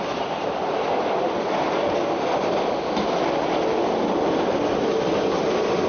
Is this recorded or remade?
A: recorded